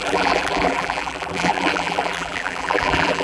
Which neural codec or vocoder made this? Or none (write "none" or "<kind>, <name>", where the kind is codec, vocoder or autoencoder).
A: vocoder, BigVGAN v2